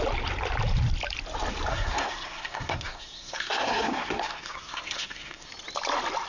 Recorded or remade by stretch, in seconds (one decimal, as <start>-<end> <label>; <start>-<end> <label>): 0.0-1.7 recorded; 1.7-5.5 remade; 5.5-6.3 recorded